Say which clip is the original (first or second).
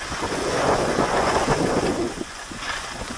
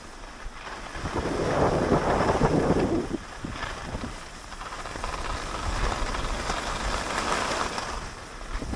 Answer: second